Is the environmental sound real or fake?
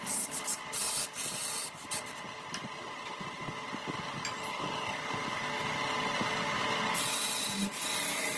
real